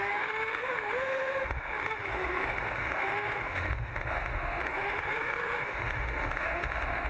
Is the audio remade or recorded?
remade